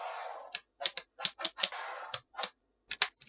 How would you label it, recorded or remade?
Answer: recorded